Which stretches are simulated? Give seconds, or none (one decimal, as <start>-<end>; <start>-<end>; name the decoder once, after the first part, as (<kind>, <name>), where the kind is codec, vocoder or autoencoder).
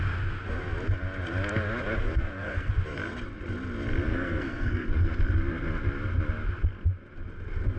2.2-2.7 (codec, SNAC); 4.1-4.9